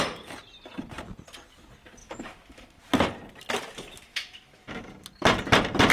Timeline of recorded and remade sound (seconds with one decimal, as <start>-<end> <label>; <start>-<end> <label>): 0.0-2.0 recorded; 2.0-2.8 remade; 2.8-4.1 recorded; 4.1-4.9 remade; 4.9-5.9 recorded